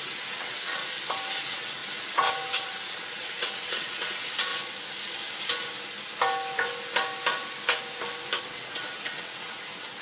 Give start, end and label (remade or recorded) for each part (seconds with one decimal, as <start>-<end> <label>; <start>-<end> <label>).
0.0-0.8 remade; 0.8-1.3 recorded; 1.3-4.5 remade; 4.5-8.4 recorded; 8.4-10.0 remade